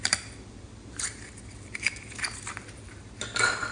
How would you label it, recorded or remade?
recorded